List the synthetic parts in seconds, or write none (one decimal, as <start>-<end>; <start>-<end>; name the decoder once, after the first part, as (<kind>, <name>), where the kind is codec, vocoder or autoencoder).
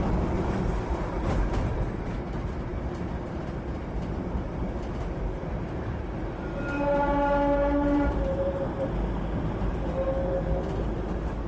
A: 7.6-8.8 (vocoder, BigVGAN v2)